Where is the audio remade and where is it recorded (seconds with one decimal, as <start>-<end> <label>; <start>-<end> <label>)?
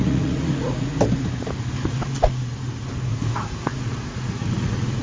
0.0-0.9 remade; 0.9-3.1 recorded; 3.1-5.0 remade